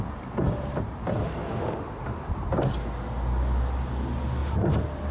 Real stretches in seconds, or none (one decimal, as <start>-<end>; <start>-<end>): 0.0-1.2; 2.3-5.1